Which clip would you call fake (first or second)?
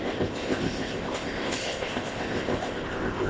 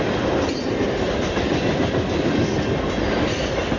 first